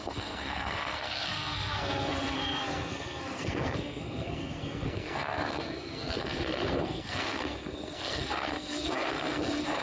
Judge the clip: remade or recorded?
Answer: remade